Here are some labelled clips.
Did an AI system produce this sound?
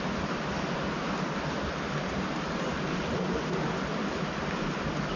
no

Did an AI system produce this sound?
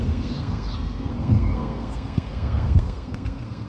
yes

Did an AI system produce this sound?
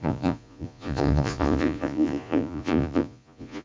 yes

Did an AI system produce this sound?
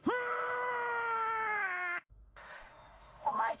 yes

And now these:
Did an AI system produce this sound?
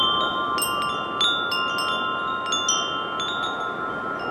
no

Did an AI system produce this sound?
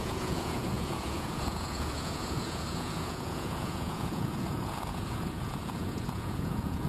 yes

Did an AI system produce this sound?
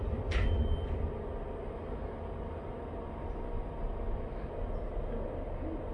no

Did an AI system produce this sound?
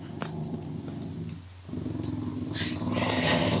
no